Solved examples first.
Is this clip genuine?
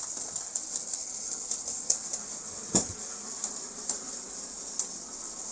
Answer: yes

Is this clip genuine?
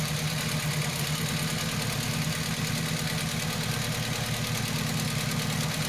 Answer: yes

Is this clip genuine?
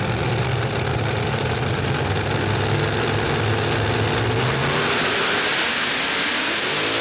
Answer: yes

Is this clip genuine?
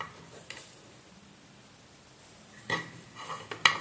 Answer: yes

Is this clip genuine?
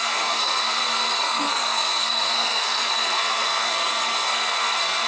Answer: no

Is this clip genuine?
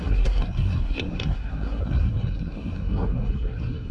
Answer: no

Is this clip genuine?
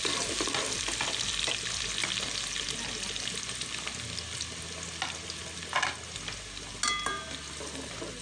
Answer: yes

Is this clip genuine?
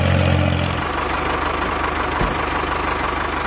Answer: yes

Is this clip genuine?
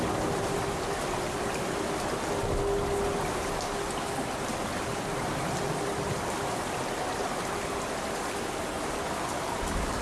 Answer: yes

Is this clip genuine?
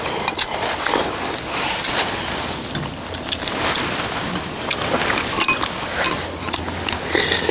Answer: yes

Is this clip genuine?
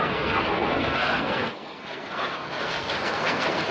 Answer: no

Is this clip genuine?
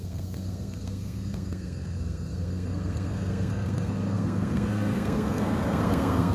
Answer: no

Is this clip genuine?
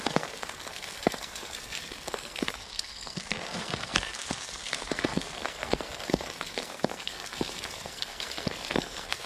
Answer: no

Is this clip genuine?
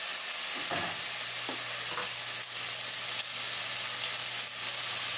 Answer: yes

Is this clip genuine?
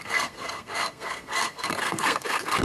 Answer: no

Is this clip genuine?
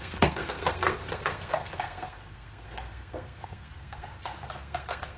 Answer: no